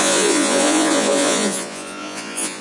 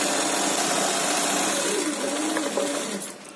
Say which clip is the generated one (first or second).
first